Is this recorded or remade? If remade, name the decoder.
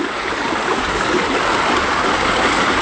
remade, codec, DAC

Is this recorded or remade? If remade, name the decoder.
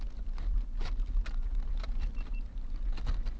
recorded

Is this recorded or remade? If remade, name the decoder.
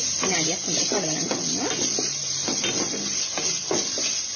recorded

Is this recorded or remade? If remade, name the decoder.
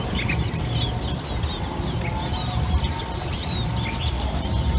recorded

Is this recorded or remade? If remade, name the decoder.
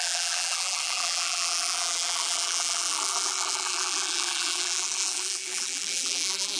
remade, vocoder, BigVGAN v2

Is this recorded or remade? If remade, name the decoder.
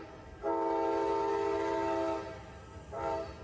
recorded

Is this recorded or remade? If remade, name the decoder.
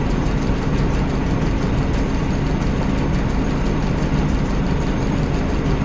recorded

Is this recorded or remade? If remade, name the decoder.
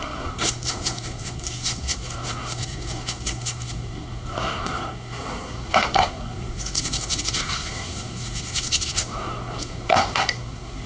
remade, codec, SNAC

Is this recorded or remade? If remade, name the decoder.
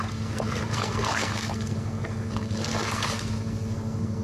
remade, codec, SNAC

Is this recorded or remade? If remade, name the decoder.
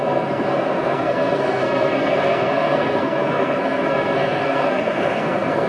remade, codec, SNAC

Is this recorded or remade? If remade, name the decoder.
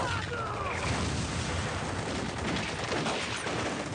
recorded